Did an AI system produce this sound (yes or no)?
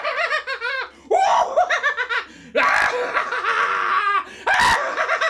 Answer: no